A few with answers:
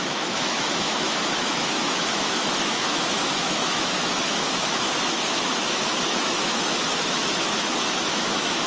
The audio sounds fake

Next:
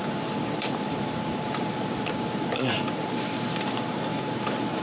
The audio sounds fake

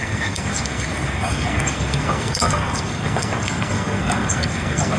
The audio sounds fake